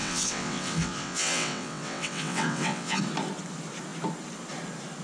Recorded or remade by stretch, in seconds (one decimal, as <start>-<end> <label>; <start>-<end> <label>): 0.0-3.0 remade; 3.0-5.0 recorded